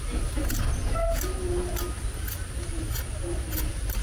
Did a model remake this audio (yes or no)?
no